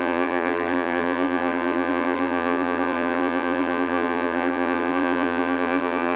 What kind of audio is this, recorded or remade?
remade